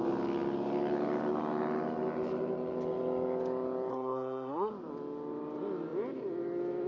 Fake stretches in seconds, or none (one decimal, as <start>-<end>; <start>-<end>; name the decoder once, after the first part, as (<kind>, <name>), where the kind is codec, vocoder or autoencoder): 3.9-4.7 (codec, SNAC)

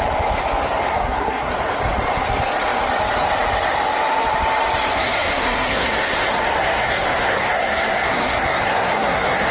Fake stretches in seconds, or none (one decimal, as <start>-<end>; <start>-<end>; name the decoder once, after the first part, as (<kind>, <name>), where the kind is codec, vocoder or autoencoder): 0.9-1.5 (codec, SNAC); 4.9-9.5

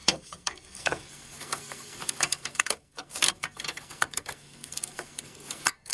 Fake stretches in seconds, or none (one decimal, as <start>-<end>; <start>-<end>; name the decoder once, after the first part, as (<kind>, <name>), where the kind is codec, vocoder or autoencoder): 0.0-5.9 (codec, SNAC)

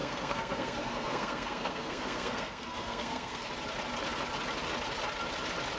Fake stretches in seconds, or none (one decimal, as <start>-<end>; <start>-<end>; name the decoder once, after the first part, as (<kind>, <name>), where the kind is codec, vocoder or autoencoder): 0.0-3.5 (codec, SNAC)

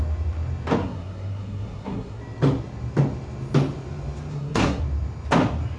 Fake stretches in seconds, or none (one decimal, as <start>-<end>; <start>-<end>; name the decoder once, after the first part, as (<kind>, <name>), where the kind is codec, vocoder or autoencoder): 0.8-2.2 (codec, SNAC); 4.3-4.8

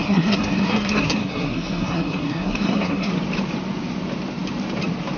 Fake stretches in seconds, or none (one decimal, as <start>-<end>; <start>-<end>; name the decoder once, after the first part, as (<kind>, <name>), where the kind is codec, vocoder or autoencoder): 0.0-3.1 (codec, SNAC)

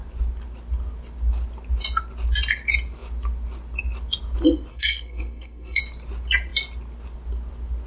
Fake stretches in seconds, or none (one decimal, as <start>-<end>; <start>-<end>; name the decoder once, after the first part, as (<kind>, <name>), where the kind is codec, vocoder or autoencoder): 4.7-5.8 (codec, SNAC)